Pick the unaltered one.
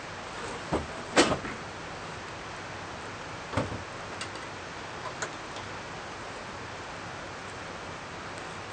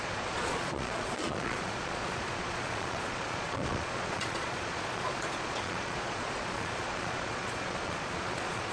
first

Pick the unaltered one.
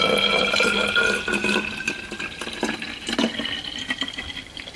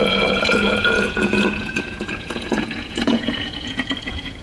first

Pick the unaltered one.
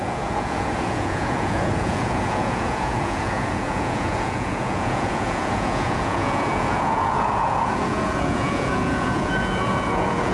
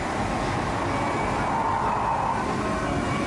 second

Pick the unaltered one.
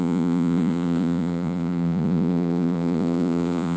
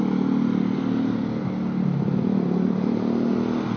second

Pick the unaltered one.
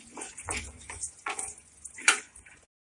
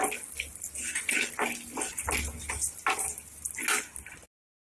second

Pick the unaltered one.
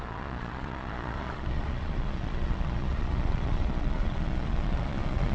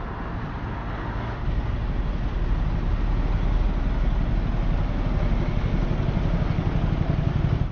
second